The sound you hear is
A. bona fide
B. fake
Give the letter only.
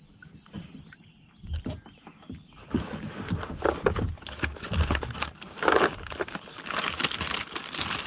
A